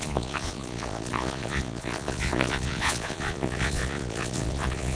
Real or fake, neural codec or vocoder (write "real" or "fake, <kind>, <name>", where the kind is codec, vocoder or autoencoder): fake, vocoder, Vocos